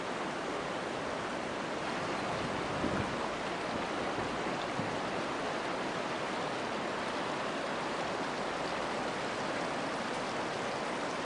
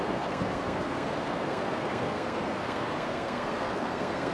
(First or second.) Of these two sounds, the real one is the first